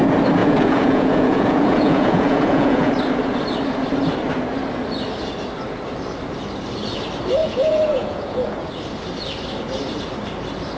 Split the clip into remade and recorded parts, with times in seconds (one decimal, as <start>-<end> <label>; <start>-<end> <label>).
0.0-0.4 recorded; 0.4-2.9 remade; 2.9-7.4 recorded; 7.4-8.7 remade; 8.7-10.8 recorded